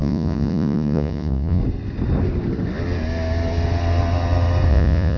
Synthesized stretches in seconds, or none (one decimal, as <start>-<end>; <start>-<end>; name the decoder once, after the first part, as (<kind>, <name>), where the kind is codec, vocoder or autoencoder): 0.0-1.6 (vocoder, Vocos); 4.7-5.2